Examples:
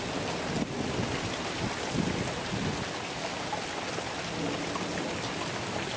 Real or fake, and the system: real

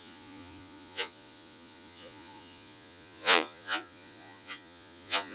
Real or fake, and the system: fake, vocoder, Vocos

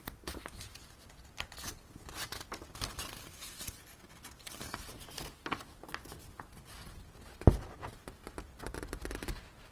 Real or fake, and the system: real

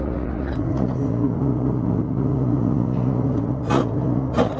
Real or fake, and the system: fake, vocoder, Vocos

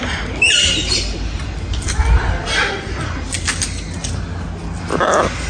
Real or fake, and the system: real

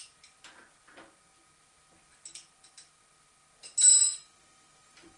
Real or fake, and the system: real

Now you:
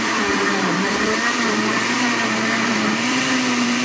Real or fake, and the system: fake, vocoder, BigVGAN v2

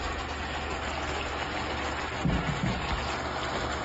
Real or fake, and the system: real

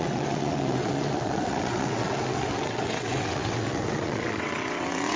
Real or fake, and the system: fake, vocoder, WaveNeXt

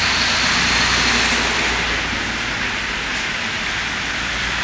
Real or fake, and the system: real